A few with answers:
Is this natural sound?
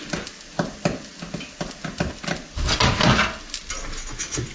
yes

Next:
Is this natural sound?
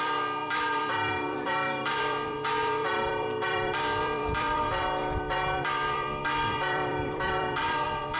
no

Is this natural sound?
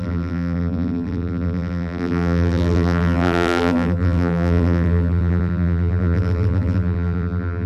no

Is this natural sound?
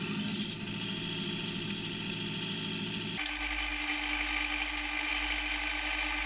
yes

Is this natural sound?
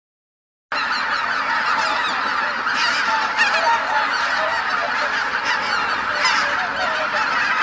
yes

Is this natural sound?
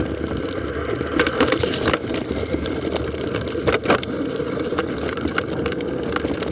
no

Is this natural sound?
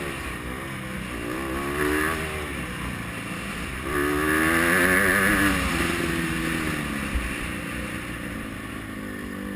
yes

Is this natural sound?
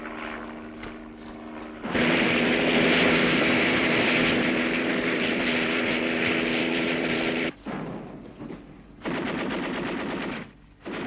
no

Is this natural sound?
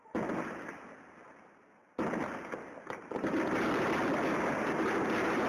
yes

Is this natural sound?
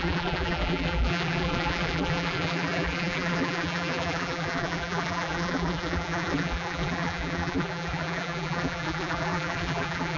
no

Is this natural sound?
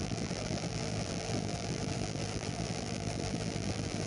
no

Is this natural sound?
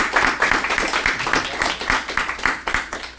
yes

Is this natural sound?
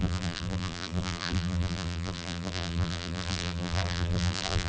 no